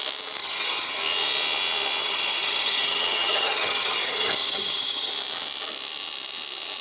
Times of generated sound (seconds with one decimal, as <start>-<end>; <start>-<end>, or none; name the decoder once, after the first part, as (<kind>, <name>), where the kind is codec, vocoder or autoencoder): 0.4-1.0 (vocoder, HiFi-GAN); 2.0-5.1